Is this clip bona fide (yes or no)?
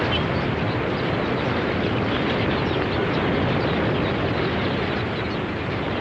yes